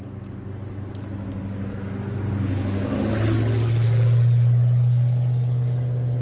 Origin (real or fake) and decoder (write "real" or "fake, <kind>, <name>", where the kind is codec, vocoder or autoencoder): real